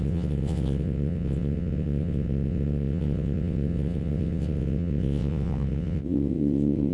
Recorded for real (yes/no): no